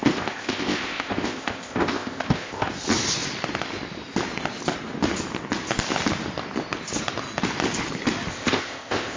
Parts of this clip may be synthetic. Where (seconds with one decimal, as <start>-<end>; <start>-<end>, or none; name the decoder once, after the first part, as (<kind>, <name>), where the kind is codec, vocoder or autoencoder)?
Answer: 0.0-2.7 (codec, ZipCodec); 8.3-9.2